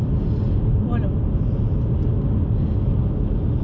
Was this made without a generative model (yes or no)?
yes